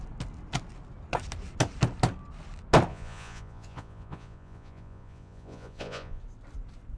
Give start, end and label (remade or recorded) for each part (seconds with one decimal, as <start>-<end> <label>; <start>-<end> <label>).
0.0-2.9 recorded; 2.9-6.2 remade; 6.2-7.0 recorded

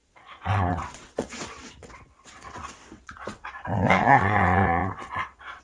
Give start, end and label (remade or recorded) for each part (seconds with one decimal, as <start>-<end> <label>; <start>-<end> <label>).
0.0-5.6 remade

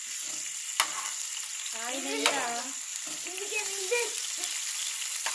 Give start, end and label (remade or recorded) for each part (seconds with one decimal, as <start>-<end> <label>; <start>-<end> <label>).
0.0-2.9 recorded; 2.9-4.3 remade; 4.3-5.3 recorded